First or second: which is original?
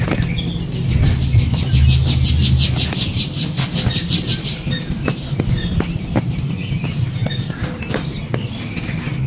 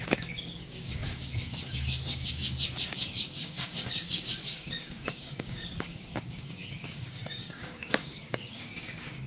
first